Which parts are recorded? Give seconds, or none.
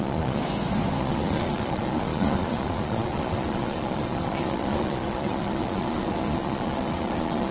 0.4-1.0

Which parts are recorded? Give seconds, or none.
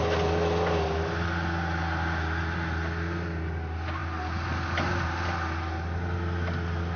0.0-7.0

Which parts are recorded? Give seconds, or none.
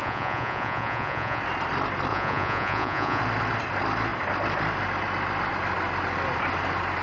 1.4-2.1; 3.2-7.0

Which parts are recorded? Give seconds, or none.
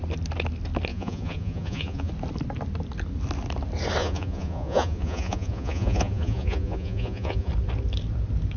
0.0-0.9; 2.1-4.0; 7.5-8.6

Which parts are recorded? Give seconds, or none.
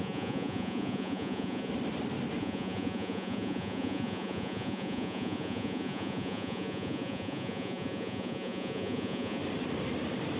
1.7-2.4; 9.4-10.4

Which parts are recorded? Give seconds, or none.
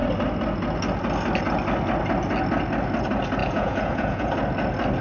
0.0-3.4; 4.3-5.0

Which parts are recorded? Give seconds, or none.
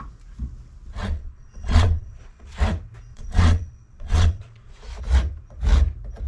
0.0-1.0; 2.6-3.1; 5.0-6.3